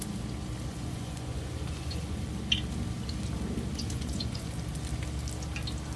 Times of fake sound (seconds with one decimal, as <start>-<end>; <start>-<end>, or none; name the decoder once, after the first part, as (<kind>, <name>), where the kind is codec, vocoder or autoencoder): 0.7-2.3 (vocoder, Vocos); 3.7-4.5